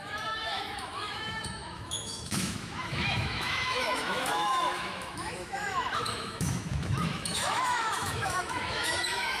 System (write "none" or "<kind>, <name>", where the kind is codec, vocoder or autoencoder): autoencoder, DAC-VAE